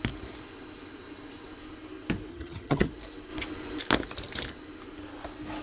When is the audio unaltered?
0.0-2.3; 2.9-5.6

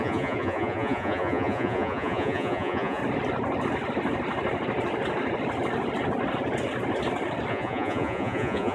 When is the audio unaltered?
3.0-7.5